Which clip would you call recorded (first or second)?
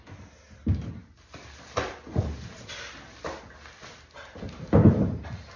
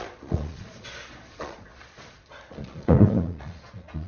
first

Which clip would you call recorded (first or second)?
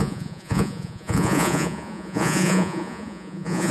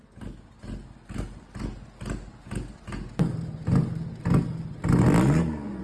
second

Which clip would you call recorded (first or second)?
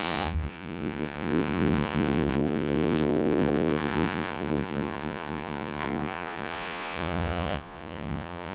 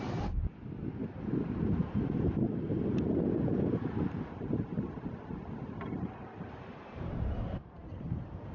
second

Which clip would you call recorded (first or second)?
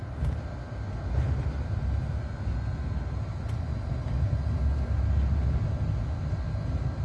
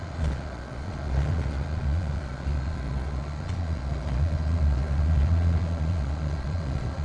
first